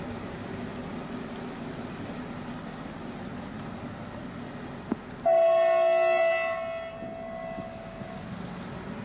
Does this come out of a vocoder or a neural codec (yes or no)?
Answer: no